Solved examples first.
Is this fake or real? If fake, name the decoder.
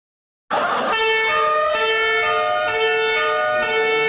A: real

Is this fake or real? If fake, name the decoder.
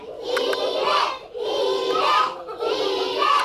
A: real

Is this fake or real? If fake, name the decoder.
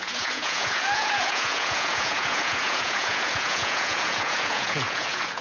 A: fake, vocoder, Vocos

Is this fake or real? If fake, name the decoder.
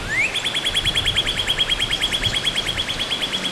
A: real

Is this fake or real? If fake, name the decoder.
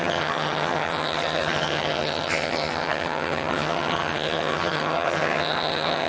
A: fake, vocoder, HiFi-GAN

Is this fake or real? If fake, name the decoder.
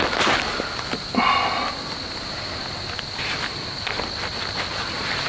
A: real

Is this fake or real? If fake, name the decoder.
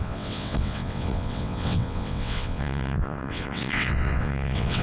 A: fake, vocoder, WaveNeXt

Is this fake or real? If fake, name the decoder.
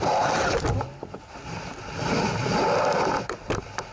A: real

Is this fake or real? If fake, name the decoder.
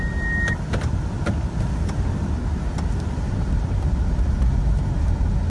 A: real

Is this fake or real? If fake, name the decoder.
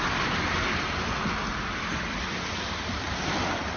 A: real